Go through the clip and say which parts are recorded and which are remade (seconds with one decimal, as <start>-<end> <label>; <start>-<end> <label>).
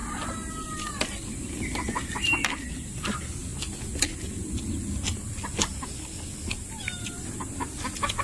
0.0-8.2 recorded